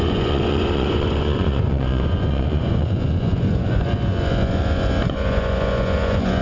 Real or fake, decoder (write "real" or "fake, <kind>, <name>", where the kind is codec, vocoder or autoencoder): fake, vocoder, Vocos